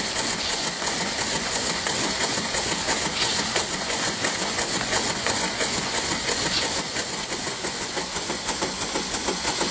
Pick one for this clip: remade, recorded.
remade